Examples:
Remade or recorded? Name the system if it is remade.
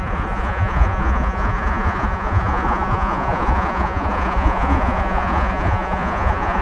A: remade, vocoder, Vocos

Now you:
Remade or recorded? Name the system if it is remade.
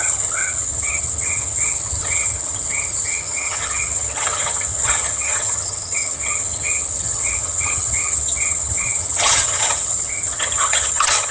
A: remade, vocoder, HiFi-GAN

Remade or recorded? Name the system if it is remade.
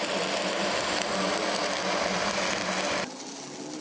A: recorded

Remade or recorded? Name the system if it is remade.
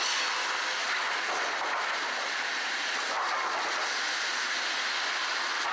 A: recorded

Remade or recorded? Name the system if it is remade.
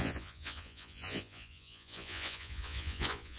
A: remade, vocoder, Vocos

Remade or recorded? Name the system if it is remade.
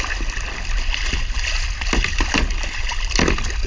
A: recorded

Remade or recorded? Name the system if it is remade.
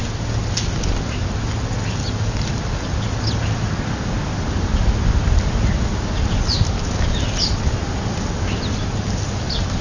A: recorded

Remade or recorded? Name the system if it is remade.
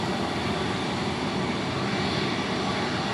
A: recorded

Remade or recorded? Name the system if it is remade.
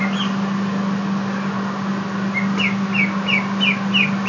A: recorded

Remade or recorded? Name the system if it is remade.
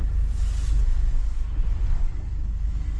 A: recorded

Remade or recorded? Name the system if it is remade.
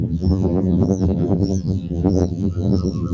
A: remade, vocoder, BigVGAN v2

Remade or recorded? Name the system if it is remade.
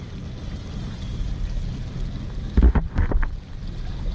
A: recorded